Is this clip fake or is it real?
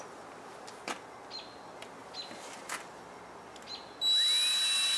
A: real